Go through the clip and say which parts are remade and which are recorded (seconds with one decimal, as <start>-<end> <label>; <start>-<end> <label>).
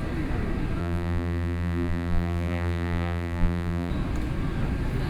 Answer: 0.0-0.8 recorded; 0.8-3.9 remade; 3.9-5.1 recorded